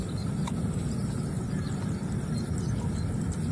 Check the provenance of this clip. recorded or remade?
recorded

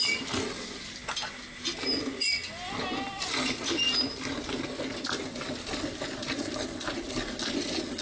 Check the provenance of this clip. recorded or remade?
recorded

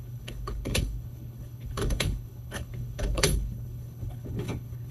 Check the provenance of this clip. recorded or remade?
remade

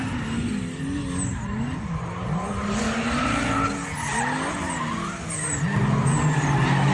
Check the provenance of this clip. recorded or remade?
recorded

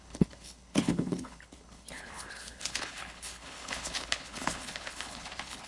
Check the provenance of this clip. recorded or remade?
remade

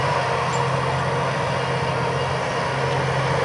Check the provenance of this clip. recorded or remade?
recorded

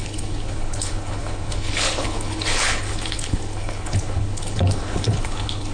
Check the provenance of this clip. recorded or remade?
remade